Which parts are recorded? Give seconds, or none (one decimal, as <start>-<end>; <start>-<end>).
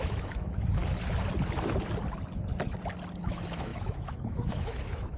0.8-3.2